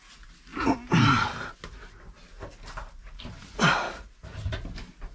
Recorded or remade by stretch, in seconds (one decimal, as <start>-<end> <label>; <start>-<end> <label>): 0.0-5.1 recorded